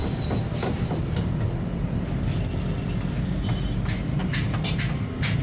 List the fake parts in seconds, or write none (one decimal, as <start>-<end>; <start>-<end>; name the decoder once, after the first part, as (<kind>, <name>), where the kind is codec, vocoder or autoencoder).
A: 0.0-3.2 (vocoder, BigVGAN v2); 4.2-5.4